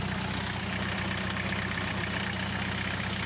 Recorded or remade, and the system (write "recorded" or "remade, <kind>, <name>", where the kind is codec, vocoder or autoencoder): recorded